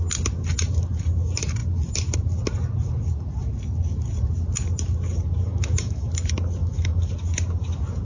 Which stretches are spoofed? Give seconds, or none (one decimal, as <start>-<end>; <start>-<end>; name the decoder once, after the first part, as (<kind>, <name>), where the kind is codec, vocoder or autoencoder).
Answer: 5.5-6.1 (autoencoder, DAC-VAE); 6.6-7.1